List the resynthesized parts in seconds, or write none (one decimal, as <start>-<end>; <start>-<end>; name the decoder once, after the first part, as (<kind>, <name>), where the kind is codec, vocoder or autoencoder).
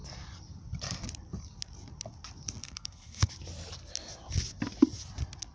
2.6-3.3 (codec, SNAC)